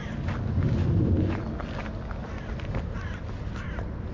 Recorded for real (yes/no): yes